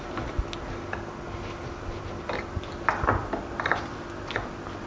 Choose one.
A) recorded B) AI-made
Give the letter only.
A